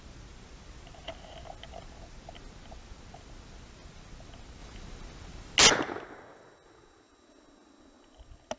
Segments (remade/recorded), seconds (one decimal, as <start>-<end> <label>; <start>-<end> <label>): 0.0-8.6 recorded